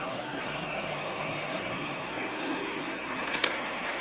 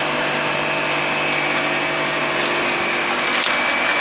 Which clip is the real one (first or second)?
second